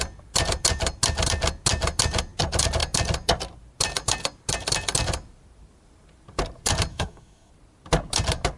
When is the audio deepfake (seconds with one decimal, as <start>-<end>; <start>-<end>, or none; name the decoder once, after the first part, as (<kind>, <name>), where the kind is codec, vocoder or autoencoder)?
6.9-7.5 (codec, SNAC)